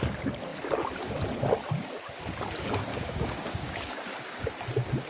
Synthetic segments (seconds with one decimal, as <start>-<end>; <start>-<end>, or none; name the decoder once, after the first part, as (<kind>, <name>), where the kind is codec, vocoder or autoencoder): 2.9-4.5 (codec, DAC)